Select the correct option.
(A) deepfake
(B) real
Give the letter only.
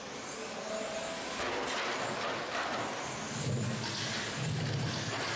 B